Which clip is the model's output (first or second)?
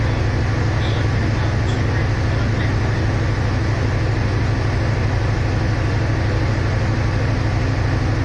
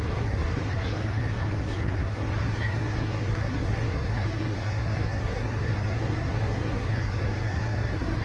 second